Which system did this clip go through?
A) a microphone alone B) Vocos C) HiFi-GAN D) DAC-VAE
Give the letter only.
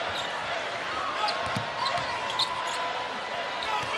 A